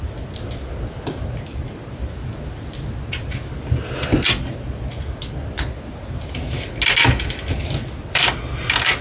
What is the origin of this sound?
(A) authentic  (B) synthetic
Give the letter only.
A